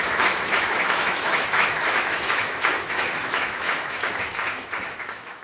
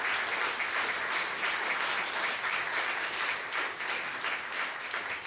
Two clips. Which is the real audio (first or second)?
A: second